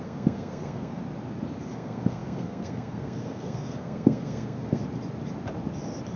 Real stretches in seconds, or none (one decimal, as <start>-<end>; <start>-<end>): 1.0-1.7; 4.8-6.2

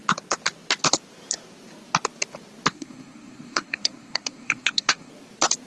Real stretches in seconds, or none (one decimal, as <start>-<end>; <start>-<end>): 0.0-2.7; 5.1-5.7

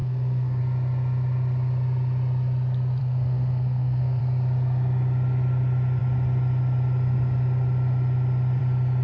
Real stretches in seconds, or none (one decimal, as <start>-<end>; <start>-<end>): 0.6-3.0; 4.2-9.0

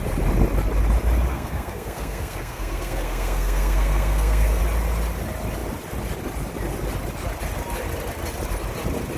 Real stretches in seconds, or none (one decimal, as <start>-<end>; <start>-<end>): 0.0-1.3; 4.6-9.2

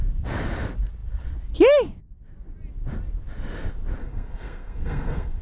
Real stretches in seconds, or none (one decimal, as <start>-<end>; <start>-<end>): 0.0-4.0